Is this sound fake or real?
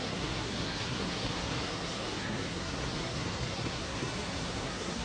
fake